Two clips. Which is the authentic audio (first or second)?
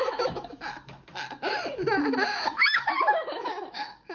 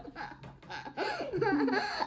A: second